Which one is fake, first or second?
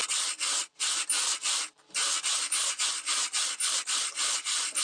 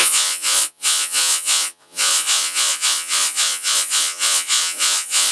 second